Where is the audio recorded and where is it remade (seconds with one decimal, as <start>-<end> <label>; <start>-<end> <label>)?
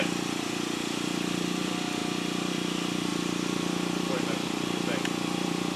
0.0-5.8 remade